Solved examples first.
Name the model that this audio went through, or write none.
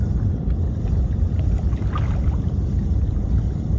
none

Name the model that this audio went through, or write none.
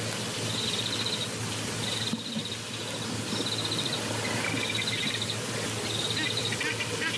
none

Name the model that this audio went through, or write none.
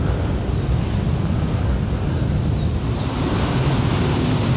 none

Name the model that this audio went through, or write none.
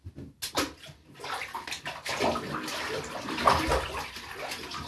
none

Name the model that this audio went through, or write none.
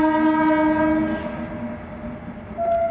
none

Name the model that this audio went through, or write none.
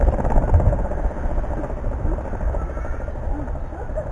none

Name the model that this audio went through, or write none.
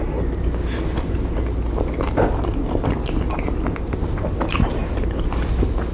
none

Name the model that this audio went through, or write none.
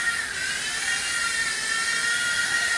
none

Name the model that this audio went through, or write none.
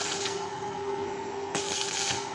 codec, SNAC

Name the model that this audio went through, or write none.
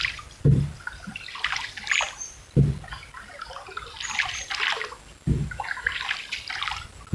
none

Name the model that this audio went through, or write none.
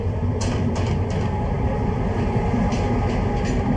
none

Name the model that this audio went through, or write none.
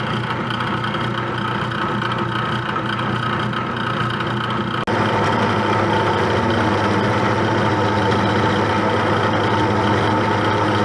none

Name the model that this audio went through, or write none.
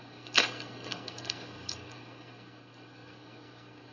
codec, SNAC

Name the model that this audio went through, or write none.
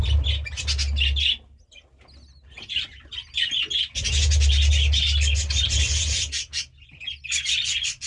none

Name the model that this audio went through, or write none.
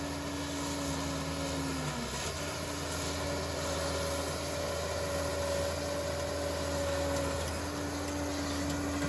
none